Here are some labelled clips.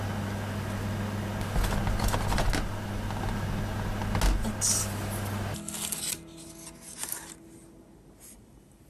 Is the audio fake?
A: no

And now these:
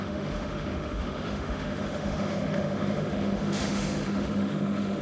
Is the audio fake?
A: yes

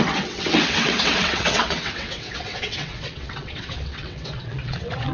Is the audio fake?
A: yes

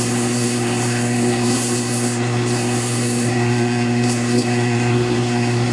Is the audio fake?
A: yes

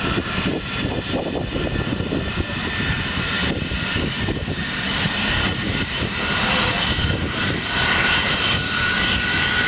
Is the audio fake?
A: yes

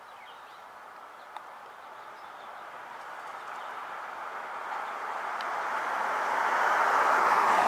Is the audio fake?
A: no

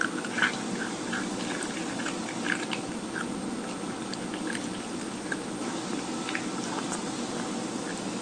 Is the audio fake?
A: no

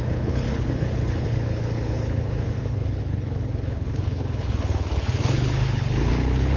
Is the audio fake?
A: yes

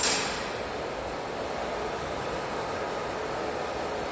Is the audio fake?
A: no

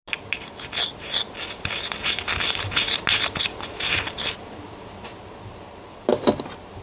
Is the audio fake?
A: no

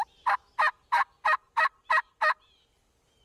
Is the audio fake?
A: no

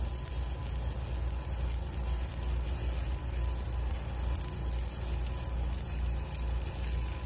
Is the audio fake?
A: no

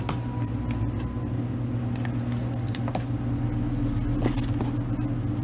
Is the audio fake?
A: no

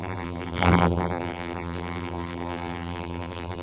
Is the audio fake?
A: yes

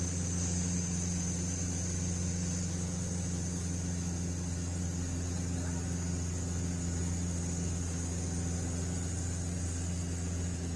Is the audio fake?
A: no